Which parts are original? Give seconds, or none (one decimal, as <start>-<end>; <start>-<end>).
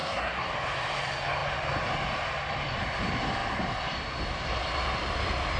0.5-5.6